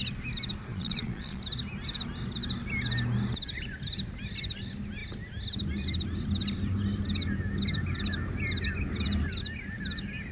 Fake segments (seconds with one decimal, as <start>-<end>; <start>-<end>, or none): 0.7-1.4